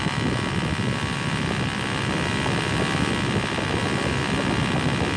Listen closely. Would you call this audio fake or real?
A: real